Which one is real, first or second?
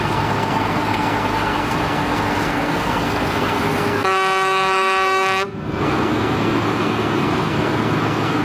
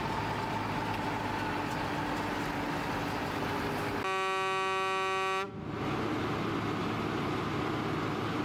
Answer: second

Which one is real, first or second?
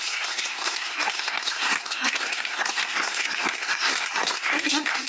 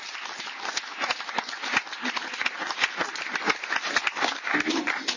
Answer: second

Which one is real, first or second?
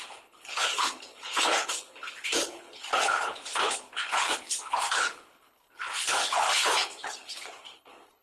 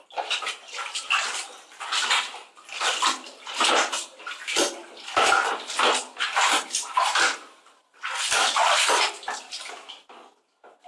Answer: second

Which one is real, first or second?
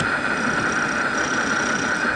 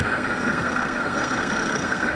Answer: first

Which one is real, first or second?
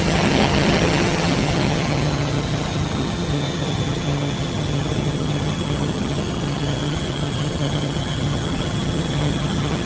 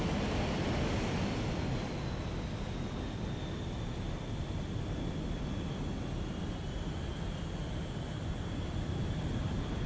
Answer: second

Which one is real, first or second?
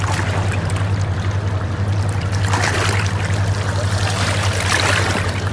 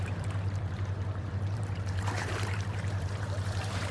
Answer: first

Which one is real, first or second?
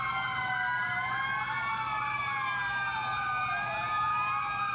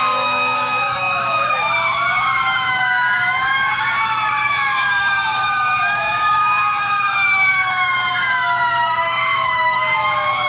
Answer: first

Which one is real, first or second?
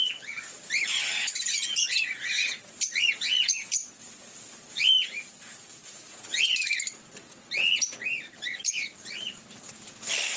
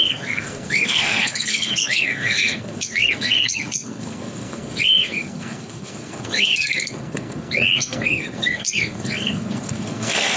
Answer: first